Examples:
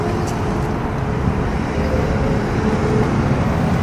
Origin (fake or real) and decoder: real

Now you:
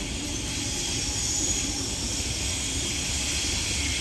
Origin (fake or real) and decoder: real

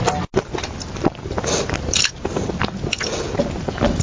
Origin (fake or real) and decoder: real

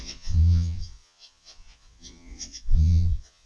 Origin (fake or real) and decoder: fake, vocoder, Vocos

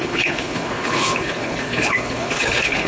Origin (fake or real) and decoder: fake, codec, HILCodec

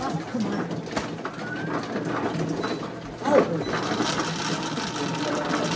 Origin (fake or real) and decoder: real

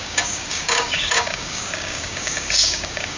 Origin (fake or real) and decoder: fake, codec, DAC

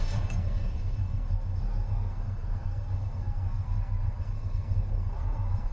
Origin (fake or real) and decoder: fake, codec, SNAC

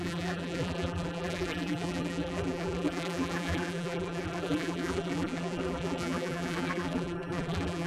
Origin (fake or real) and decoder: fake, vocoder, BigVGAN v2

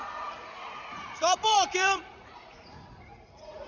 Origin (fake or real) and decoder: fake, vocoder, Vocos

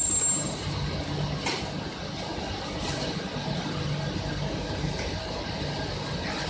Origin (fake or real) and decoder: real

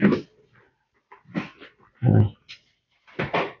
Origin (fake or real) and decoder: real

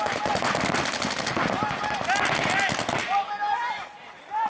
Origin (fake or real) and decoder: real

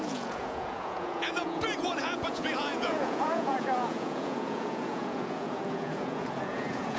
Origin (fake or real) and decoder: fake, vocoder, Vocos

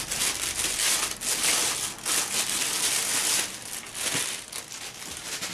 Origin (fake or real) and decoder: real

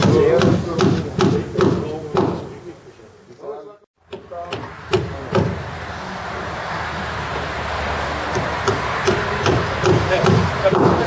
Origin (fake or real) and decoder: real